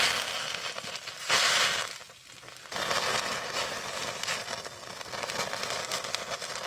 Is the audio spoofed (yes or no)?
no